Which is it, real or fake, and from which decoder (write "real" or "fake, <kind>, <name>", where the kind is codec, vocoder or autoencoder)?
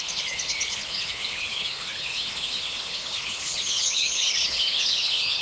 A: fake, codec, HILCodec